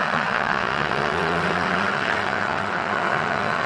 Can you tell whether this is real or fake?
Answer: fake